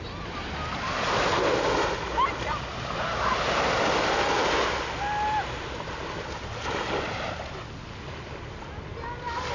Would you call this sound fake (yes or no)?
no